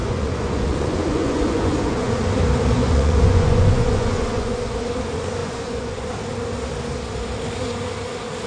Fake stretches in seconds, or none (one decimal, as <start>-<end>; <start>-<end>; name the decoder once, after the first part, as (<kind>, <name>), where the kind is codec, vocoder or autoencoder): 0.0-2.1 (vocoder, Vocos); 2.8-4.8; 5.4-6.1

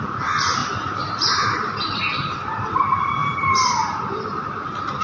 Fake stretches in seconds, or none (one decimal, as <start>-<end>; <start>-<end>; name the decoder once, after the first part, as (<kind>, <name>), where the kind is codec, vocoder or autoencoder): 0.6-2.8 (vocoder, BigVGAN v2); 3.2-4.2

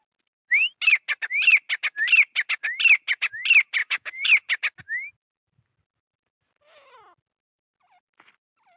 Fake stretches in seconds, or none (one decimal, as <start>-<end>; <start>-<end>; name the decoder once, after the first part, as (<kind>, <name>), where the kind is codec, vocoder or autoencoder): 3.8-4.3 (codec, DAC)

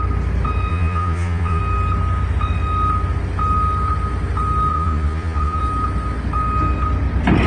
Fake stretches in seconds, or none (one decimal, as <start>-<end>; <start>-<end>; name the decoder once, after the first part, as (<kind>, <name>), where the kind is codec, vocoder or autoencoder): 0.7-1.6 (vocoder, Vocos); 4.7-5.6

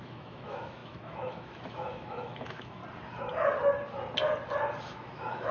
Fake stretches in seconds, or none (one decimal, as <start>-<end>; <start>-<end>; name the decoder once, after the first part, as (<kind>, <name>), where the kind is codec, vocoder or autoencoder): 0.0-2.8 (autoencoder, DAC-VAE); 4.8-5.5